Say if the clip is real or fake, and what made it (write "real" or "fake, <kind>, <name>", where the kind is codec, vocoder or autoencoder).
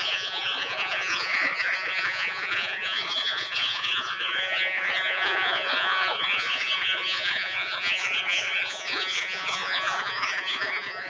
fake, vocoder, Vocos